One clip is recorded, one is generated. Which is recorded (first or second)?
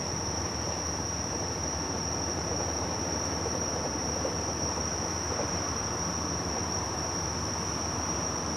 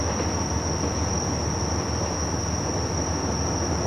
second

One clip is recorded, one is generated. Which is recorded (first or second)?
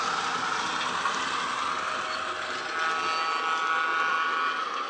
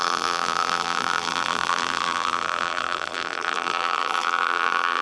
first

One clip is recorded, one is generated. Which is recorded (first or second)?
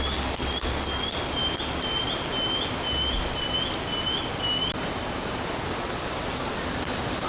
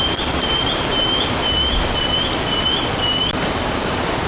first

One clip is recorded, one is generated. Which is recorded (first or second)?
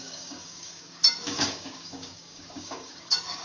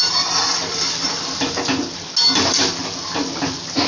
second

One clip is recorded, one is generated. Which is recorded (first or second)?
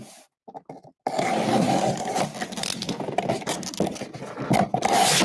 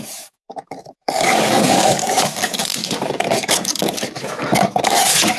first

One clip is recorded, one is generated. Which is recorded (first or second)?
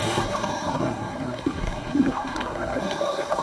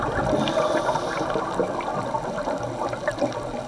second